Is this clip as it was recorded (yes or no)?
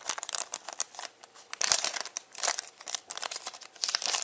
no